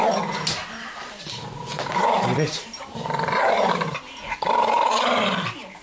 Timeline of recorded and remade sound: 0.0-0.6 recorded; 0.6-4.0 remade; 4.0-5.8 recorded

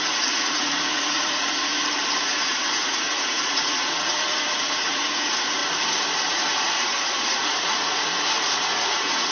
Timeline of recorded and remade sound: 0.0-1.7 remade; 1.7-2.2 recorded; 2.2-5.6 remade; 5.6-6.3 recorded; 6.3-9.3 remade

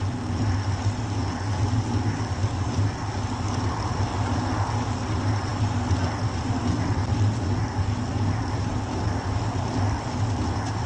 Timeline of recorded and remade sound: 0.0-10.9 recorded

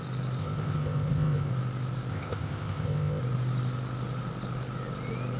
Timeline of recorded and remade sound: 0.0-0.4 recorded; 0.4-1.5 remade; 1.5-2.1 recorded; 2.1-3.2 remade; 3.2-5.4 recorded

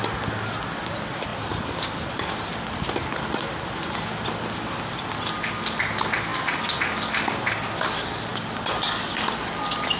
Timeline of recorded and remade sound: 0.0-1.3 recorded; 1.3-2.6 remade; 2.6-10.0 recorded

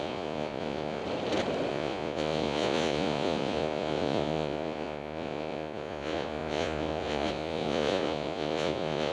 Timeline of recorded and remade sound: 0.0-1.0 remade; 1.0-1.7 recorded; 1.7-9.1 remade